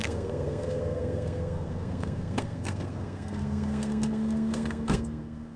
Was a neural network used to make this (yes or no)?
yes